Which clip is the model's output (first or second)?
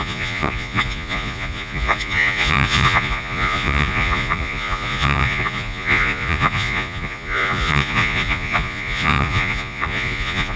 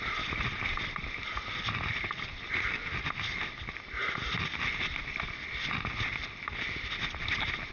first